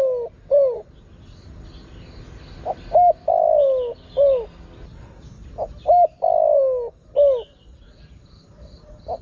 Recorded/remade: recorded